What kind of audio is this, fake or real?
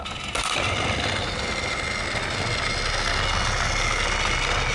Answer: real